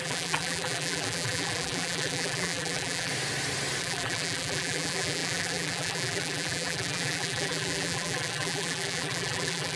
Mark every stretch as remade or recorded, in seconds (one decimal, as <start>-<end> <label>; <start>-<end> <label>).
0.0-3.1 remade; 3.1-3.8 recorded; 3.8-9.8 remade